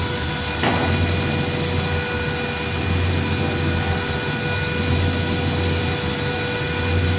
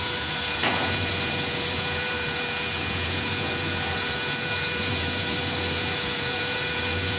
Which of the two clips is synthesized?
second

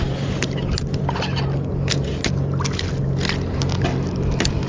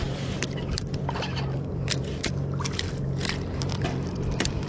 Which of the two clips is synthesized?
second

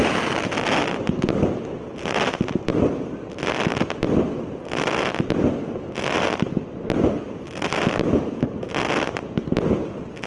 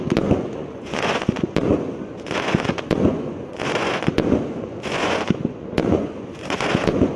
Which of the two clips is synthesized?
second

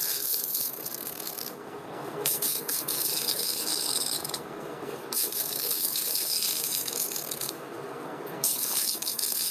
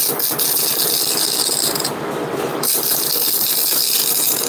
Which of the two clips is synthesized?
first